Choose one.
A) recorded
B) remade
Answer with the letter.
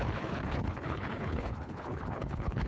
B